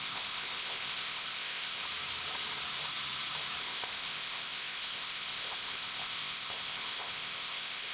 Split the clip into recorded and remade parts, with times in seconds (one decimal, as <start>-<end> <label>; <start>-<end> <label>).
0.0-1.8 remade; 1.8-3.6 recorded; 3.6-7.9 remade